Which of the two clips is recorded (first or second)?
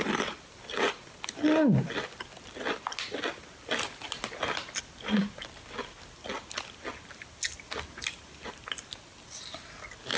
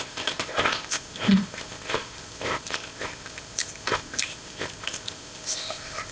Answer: first